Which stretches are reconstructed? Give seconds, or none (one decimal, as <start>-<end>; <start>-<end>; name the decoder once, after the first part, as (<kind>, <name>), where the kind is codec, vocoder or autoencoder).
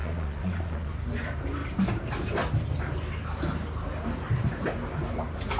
0.0-0.9 (vocoder, Vocos)